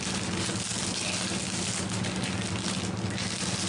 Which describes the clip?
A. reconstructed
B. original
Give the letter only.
B